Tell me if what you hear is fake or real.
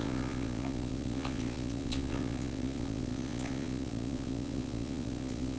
fake